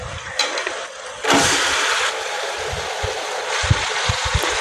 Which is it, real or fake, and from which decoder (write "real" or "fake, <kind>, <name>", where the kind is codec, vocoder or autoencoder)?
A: real